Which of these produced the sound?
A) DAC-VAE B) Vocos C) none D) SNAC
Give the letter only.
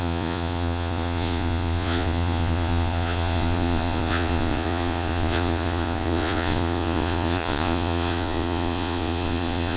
B